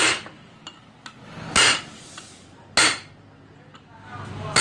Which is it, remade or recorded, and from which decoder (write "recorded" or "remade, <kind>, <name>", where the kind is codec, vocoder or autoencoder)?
recorded